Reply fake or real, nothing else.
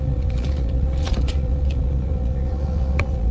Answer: fake